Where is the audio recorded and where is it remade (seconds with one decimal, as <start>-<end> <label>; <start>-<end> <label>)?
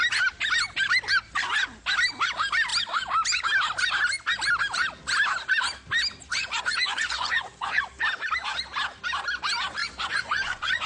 0.0-6.3 recorded; 6.3-7.8 remade; 7.8-9.8 recorded; 9.8-10.9 remade